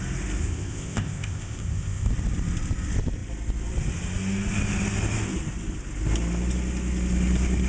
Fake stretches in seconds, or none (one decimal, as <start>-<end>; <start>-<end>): 0.4-2.1